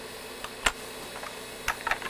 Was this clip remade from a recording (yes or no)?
no